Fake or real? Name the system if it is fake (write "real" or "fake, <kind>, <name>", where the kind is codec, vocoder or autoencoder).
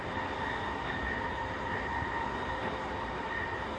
real